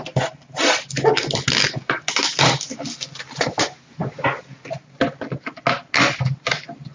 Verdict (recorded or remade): recorded